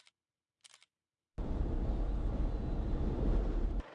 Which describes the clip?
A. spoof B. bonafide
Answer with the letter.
B